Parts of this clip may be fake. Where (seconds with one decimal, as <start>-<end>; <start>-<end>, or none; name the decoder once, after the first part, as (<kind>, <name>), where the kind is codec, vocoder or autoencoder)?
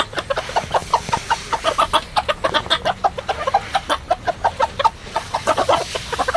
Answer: 5.0-5.8 (vocoder, Vocos)